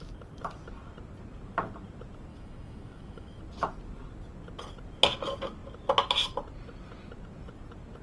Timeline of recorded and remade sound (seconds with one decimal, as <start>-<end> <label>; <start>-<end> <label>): 0.0-2.3 recorded; 2.3-3.4 remade; 3.4-8.0 recorded

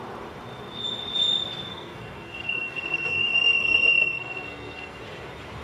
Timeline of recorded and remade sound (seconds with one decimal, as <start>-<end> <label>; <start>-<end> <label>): 0.0-1.7 recorded; 1.7-5.0 remade; 5.0-5.6 recorded

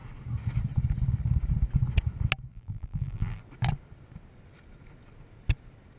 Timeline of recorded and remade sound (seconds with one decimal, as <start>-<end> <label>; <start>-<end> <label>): 0.0-2.5 recorded; 2.5-3.4 remade; 3.4-6.0 recorded

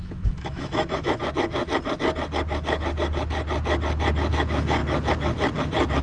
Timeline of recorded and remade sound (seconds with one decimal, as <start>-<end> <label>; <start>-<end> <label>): 0.0-1.6 remade; 1.6-4.3 recorded; 4.3-4.8 remade; 4.8-6.0 recorded

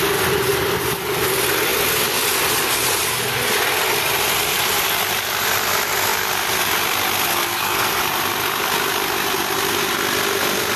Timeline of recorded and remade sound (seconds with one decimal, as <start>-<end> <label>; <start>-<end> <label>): 0.0-7.3 recorded; 7.3-8.0 remade; 8.0-10.8 recorded

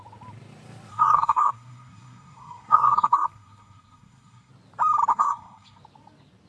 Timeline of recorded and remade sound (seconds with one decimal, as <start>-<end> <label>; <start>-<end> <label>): 0.0-0.9 recorded; 0.9-4.5 remade; 4.5-5.1 recorded; 5.1-5.8 remade; 5.8-6.5 recorded